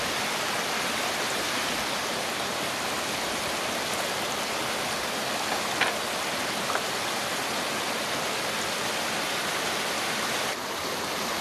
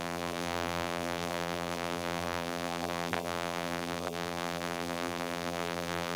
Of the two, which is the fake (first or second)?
second